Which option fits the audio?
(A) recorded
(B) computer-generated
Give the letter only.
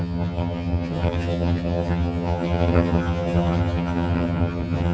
B